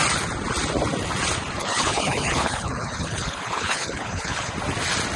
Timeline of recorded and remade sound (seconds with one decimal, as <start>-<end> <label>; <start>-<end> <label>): 0.0-1.6 recorded; 1.6-4.5 remade; 4.5-5.2 recorded